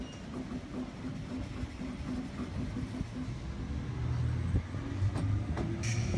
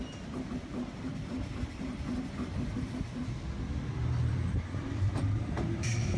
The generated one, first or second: second